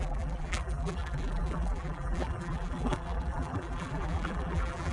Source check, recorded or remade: remade